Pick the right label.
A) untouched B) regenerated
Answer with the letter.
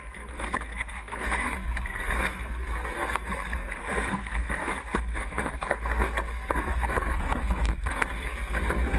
B